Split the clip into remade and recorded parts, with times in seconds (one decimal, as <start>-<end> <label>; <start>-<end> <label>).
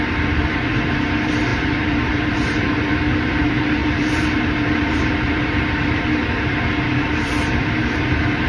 0.0-8.5 remade